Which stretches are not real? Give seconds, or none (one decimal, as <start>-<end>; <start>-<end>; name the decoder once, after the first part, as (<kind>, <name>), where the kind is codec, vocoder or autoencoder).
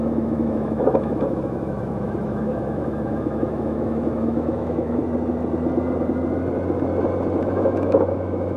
0.0-5.0 (autoencoder, DAC-VAE); 7.4-8.6